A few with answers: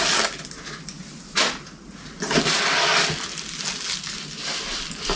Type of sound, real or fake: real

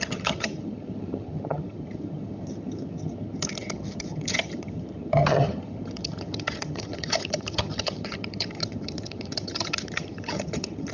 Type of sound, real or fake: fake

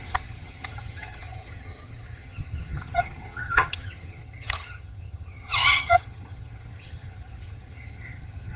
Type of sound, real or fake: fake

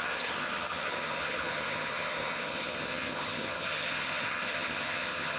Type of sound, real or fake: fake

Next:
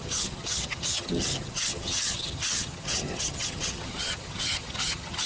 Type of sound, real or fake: fake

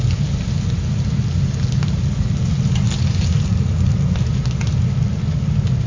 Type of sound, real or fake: real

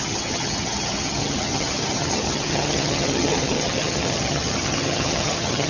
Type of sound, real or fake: fake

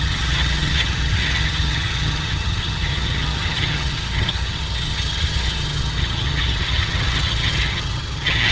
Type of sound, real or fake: fake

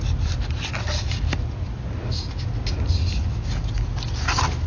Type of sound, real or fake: real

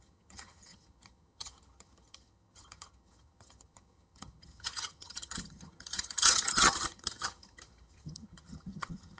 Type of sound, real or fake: fake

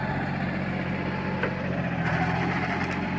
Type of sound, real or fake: real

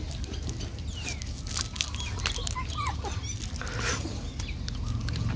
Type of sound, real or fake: real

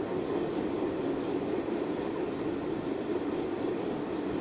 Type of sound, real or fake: real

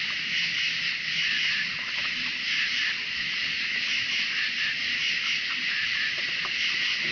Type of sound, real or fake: real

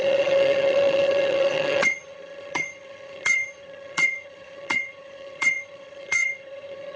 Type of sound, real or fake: fake